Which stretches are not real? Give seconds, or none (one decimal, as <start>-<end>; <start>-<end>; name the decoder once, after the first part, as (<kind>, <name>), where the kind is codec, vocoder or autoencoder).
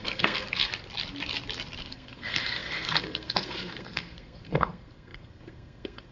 0.0-0.7 (codec, SNAC); 1.8-6.1